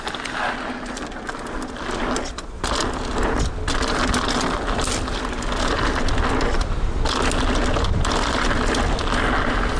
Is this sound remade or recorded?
recorded